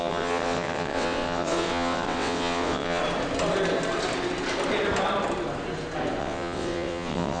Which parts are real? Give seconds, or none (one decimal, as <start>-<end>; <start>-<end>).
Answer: 3.0-6.2